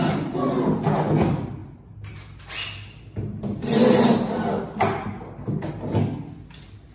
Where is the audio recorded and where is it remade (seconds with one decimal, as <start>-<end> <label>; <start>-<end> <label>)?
0.0-6.9 recorded